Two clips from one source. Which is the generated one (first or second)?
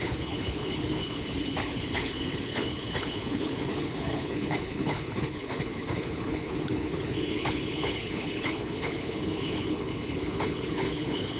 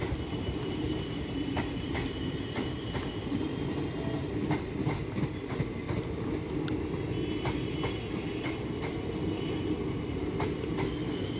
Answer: first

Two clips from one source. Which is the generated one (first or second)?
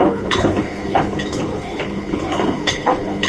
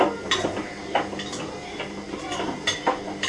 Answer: first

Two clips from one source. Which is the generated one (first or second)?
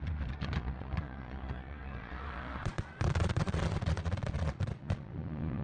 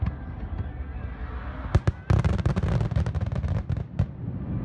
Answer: first